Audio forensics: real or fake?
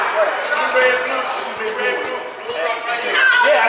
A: real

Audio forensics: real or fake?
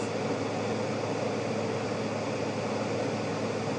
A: real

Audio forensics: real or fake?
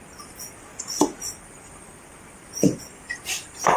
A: real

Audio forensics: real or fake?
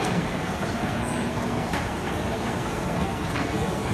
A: fake